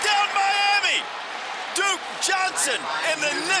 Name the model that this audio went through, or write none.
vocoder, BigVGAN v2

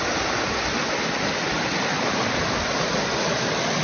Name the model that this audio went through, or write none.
none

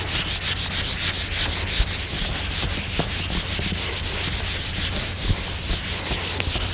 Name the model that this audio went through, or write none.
none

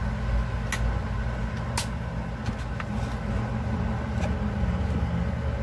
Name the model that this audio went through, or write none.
none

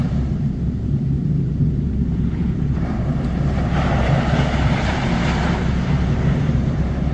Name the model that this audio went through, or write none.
vocoder, BigVGAN v2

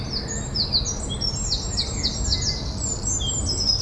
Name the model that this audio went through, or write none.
none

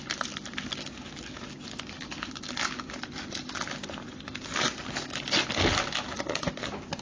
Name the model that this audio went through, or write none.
none